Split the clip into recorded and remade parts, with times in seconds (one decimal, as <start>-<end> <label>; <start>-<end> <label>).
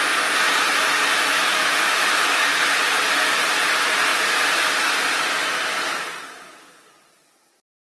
0.0-1.3 recorded; 1.3-2.6 remade; 2.6-7.8 recorded